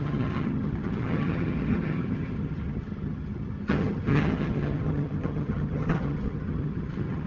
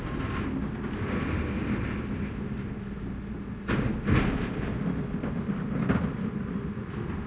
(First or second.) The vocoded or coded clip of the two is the first